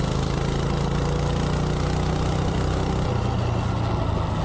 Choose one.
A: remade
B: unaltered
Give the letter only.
B